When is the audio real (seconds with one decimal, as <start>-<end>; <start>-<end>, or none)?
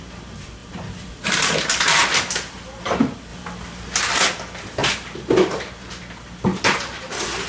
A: 0.0-0.6; 2.8-4.8; 6.0-6.5; 7.1-7.5